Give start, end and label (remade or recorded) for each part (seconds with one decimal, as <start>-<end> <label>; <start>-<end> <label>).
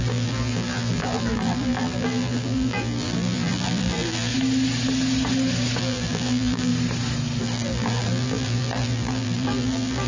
0.0-4.3 remade; 4.3-5.8 recorded; 5.8-6.7 remade; 6.7-7.4 recorded; 7.4-10.1 remade